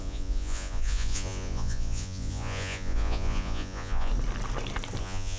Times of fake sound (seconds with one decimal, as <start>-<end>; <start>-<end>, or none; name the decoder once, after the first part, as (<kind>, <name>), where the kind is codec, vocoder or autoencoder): 0.0-4.1 (vocoder, Vocos); 5.0-5.4